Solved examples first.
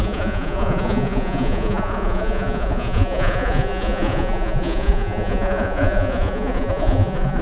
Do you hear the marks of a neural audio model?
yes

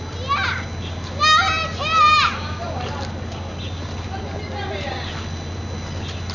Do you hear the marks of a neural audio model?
no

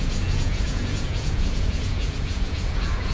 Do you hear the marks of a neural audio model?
yes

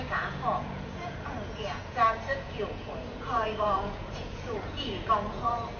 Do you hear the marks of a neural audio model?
yes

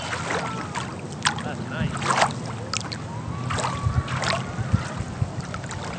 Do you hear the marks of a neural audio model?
no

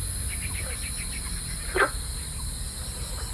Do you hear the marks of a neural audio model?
no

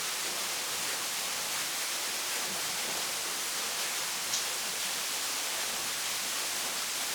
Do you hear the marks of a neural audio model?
no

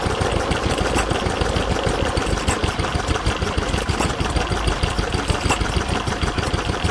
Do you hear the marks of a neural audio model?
no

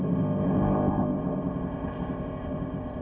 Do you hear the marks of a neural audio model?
yes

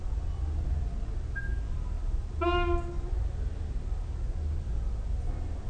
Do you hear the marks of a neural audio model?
no